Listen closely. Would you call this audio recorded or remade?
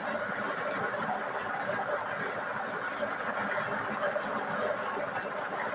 recorded